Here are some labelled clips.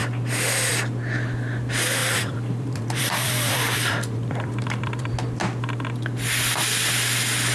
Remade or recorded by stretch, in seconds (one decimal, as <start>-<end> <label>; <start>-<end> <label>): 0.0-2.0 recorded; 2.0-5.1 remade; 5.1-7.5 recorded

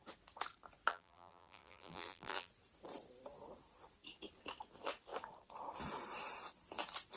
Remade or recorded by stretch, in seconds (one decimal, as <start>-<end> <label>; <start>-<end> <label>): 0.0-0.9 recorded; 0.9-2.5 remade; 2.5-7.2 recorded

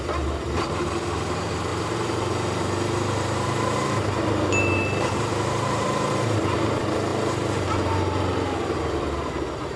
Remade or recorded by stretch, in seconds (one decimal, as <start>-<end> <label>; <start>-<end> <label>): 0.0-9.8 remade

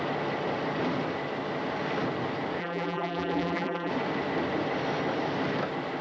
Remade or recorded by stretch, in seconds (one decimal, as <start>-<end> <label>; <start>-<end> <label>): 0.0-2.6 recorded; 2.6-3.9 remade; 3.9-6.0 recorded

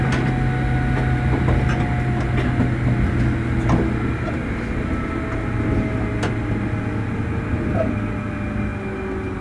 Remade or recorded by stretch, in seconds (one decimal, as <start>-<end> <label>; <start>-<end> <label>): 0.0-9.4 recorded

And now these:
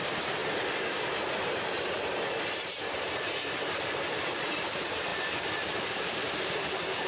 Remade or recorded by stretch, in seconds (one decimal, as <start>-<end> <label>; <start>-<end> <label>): 0.0-0.4 remade; 0.4-1.4 recorded; 1.4-7.1 remade

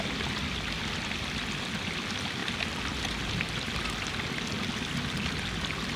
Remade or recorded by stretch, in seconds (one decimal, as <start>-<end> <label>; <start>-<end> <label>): 0.0-6.0 recorded